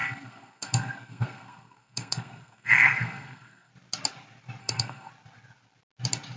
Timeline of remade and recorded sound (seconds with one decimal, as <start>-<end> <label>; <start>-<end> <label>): 0.0-3.7 remade; 3.7-4.6 recorded; 4.6-5.1 remade; 5.1-6.4 recorded